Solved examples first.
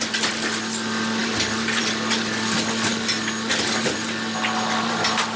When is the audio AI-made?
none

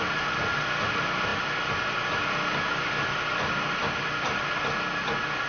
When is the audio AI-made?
none